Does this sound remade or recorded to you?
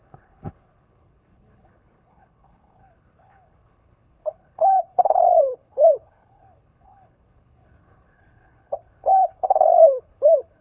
remade